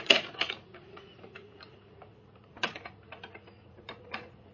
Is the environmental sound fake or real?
fake